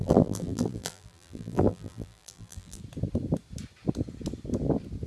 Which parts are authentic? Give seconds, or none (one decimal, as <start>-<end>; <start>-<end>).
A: 2.8-5.1